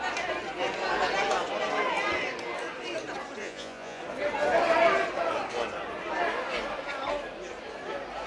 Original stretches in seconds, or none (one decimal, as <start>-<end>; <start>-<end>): 0.0-3.4; 4.0-8.3